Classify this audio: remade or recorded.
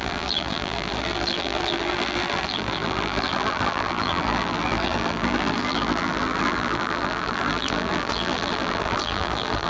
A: remade